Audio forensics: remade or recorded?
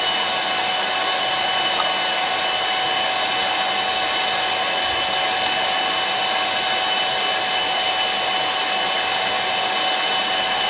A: recorded